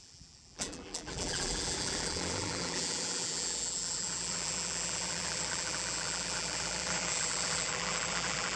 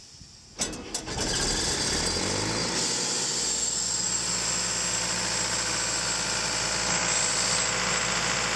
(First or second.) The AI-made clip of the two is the first